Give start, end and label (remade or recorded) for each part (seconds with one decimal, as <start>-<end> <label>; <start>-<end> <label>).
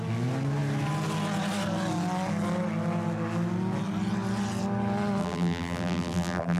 0.0-5.2 recorded; 5.2-6.6 remade